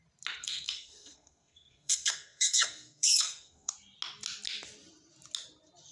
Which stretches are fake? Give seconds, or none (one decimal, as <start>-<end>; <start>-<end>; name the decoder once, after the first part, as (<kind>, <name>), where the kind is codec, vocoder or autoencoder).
0.4-3.7 (codec, SNAC)